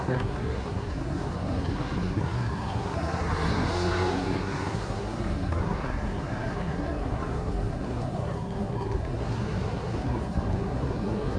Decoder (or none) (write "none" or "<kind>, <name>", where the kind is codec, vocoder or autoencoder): codec, SNAC